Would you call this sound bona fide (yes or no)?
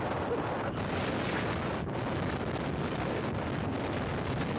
yes